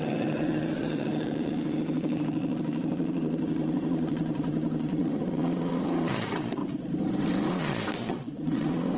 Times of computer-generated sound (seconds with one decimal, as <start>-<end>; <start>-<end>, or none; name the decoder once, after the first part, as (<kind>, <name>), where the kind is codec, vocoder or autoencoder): 0.0-6.6 (vocoder, Vocos); 7.5-9.0